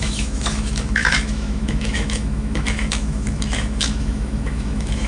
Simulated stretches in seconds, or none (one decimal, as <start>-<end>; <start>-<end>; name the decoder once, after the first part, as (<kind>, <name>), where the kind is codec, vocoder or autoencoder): 0.0-5.1 (autoencoder, DAC-VAE)